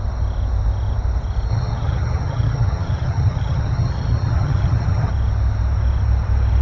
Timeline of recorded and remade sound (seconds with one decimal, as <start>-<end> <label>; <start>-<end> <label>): 0.0-1.5 recorded; 1.5-5.1 remade; 5.1-6.6 recorded